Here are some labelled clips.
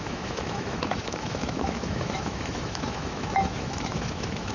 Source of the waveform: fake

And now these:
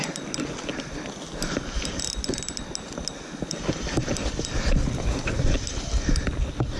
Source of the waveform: real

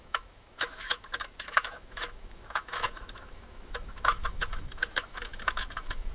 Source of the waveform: fake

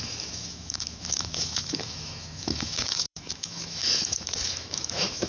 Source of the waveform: fake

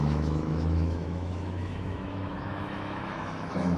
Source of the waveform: fake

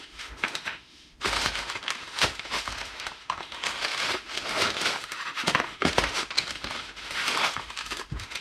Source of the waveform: fake